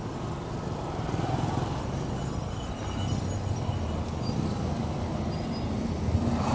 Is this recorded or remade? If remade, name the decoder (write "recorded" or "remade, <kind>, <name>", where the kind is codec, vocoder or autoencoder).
recorded